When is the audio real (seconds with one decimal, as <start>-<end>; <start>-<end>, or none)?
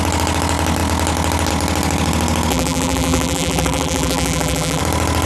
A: 0.0-2.5; 4.8-5.3